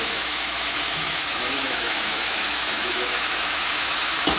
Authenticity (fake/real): fake